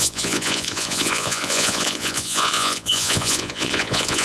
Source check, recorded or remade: remade